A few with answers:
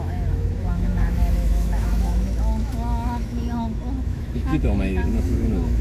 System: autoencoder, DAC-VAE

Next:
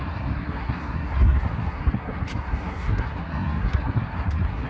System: codec, SNAC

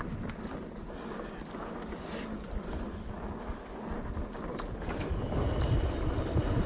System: none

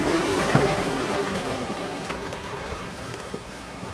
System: codec, SNAC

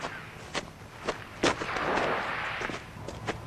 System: none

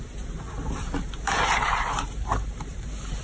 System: vocoder, BigVGAN v2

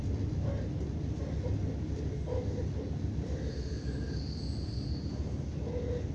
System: none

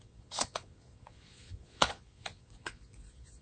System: vocoder, Vocos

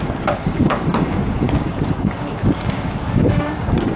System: codec, DAC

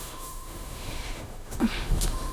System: autoencoder, DAC-VAE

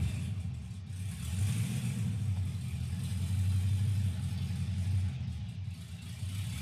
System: none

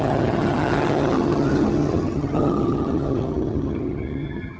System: vocoder, HiFi-GAN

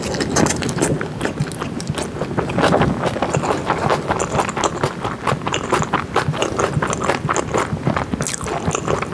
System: none